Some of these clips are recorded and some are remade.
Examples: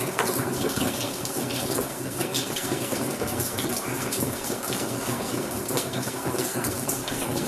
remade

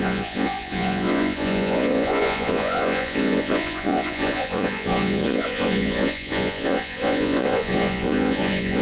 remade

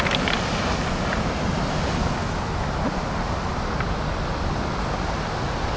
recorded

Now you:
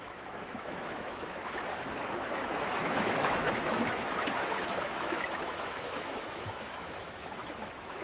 remade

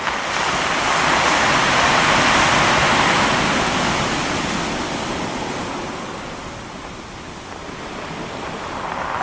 recorded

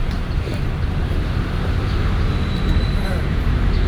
remade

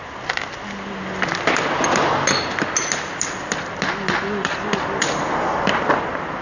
recorded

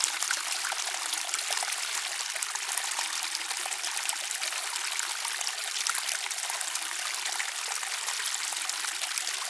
recorded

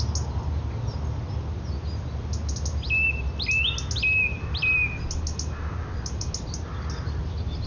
recorded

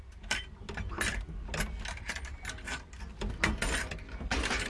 recorded